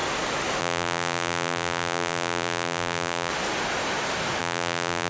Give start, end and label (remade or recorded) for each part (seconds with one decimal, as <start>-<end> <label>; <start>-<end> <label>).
0.0-0.6 recorded; 0.6-3.3 remade; 3.3-4.4 recorded; 4.4-5.1 remade